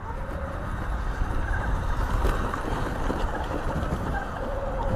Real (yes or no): yes